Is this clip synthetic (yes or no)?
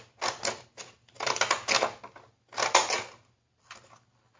no